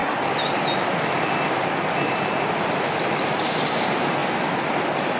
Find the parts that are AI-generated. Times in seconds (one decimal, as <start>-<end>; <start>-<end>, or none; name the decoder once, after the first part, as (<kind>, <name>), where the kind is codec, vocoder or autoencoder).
none